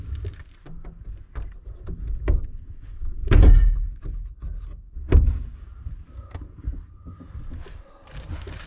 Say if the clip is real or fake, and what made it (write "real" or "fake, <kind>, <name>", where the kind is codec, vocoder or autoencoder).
real